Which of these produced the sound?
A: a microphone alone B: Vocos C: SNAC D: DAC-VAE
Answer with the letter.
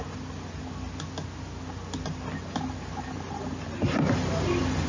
A